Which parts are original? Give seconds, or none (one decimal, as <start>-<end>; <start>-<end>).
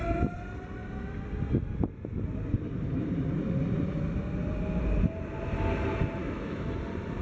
0.0-6.2; 6.8-7.2